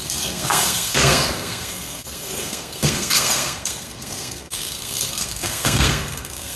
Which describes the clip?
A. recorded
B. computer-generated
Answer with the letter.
B